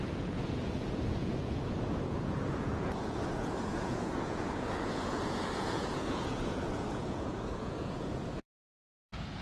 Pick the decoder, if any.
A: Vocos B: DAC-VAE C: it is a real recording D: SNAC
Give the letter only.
A